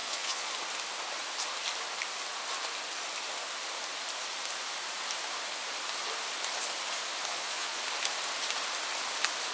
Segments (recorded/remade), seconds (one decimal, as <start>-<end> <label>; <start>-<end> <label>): 0.0-0.5 remade; 0.5-7.3 recorded; 7.3-7.8 remade; 7.8-9.5 recorded